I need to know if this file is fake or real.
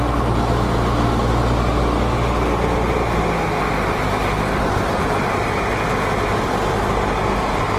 real